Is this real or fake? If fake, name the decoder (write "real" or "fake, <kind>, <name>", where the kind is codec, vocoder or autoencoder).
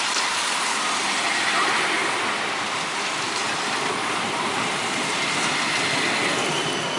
real